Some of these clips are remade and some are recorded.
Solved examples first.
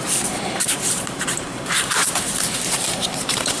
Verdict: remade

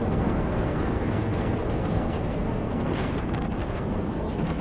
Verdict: remade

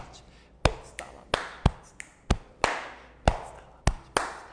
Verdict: recorded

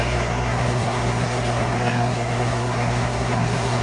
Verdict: remade